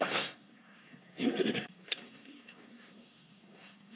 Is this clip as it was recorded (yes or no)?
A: no